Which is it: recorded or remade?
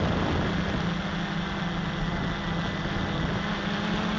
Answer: recorded